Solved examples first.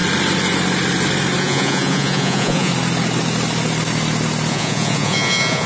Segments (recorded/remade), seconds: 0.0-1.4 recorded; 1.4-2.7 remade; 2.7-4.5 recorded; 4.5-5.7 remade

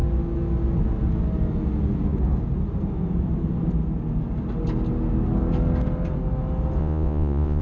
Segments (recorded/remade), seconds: 0.0-6.8 recorded; 6.8-7.6 remade